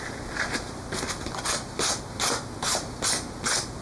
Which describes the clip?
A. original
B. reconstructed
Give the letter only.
A